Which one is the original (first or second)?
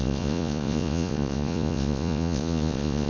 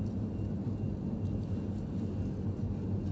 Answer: second